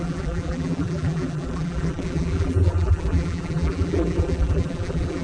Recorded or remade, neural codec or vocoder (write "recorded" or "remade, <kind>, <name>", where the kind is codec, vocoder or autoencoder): remade, vocoder, BigVGAN v2